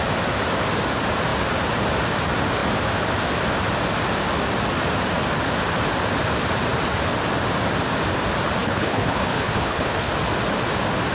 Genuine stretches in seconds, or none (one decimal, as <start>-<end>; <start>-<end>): 0.0-8.6; 10.1-11.1